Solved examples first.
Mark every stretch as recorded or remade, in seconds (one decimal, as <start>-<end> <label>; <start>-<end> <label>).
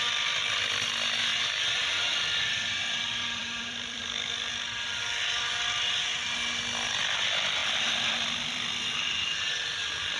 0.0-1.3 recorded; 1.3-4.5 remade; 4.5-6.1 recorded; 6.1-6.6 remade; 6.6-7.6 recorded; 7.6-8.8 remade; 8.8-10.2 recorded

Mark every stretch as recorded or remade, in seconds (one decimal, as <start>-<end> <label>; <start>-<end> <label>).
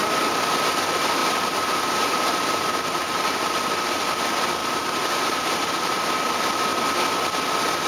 0.0-1.2 recorded; 1.2-3.7 remade; 3.7-4.6 recorded; 4.6-6.1 remade; 6.1-7.9 recorded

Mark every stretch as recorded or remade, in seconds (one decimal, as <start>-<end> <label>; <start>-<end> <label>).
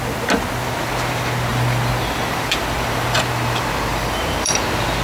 0.0-1.5 recorded; 1.5-3.2 remade; 3.2-3.9 recorded; 3.9-4.6 remade; 4.6-5.0 recorded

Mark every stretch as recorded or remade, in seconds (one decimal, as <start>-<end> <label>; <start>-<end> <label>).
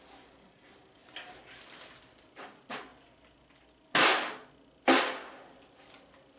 0.0-6.4 recorded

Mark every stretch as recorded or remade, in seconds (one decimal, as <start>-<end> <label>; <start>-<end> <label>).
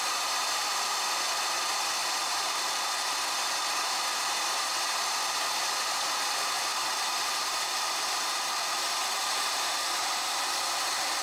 0.0-2.0 recorded; 2.0-3.7 remade; 3.7-6.7 recorded; 6.7-8.8 remade; 8.8-11.2 recorded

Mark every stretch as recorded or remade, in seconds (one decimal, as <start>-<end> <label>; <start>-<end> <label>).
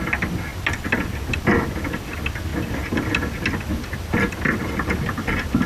0.0-5.7 recorded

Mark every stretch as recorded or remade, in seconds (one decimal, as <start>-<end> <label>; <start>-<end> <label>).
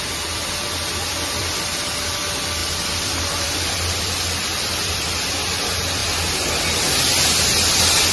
0.0-1.4 recorded; 1.4-2.2 remade; 2.2-2.6 recorded; 2.6-4.9 remade; 4.9-8.1 recorded